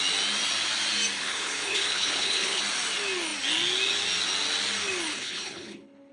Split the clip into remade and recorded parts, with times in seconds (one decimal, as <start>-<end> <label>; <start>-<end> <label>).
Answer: 0.0-1.2 recorded; 1.2-2.6 remade; 2.6-5.1 recorded; 5.1-6.1 remade